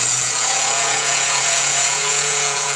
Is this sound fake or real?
fake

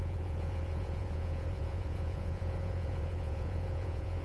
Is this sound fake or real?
fake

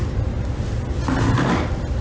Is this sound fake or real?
real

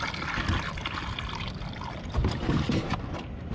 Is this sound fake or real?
real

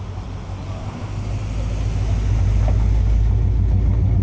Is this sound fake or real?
real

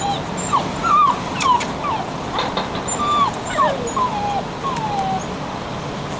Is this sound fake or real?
real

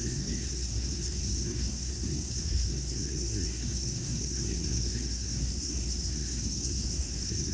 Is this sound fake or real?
fake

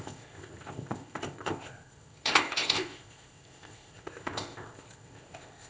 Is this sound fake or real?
fake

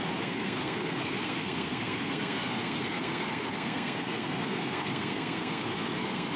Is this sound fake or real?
fake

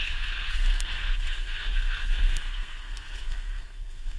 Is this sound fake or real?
fake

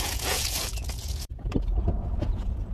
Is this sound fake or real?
fake